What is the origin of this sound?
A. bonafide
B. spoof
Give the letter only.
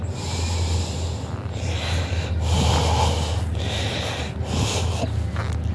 A